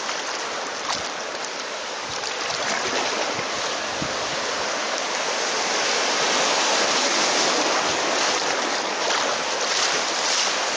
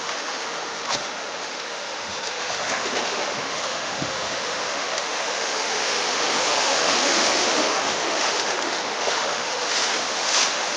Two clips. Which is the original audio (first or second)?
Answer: first